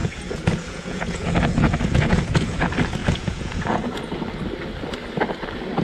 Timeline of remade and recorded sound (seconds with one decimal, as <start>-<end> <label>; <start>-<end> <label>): 0.0-2.6 remade; 2.6-3.0 recorded; 3.0-4.0 remade; 4.0-5.8 recorded